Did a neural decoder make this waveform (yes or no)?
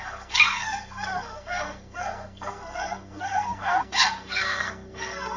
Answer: yes